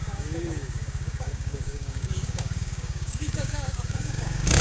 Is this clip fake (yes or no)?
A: yes